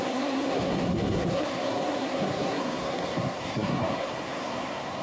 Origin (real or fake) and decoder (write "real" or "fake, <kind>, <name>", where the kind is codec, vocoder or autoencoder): fake, codec, SNAC